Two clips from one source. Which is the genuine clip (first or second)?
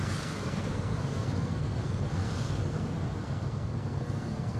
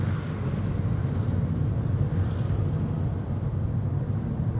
second